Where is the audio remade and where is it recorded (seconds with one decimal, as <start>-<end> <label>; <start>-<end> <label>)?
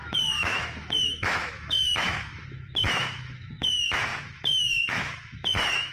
0.0-5.9 remade